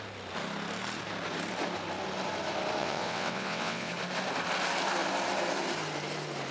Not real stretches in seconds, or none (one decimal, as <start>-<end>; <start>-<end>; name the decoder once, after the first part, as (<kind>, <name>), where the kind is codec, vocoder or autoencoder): 2.8-3.9 (vocoder, WaveNeXt)